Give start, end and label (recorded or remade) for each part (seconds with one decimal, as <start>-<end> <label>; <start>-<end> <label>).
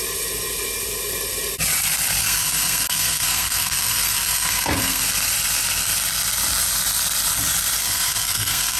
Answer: 0.0-2.2 recorded; 2.2-5.0 remade; 5.0-7.8 recorded; 7.8-8.8 remade